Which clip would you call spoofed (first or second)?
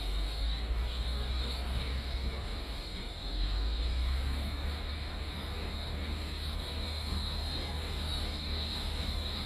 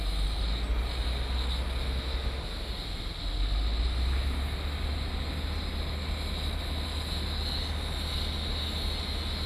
first